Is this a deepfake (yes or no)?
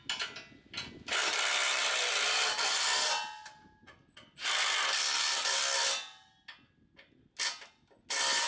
no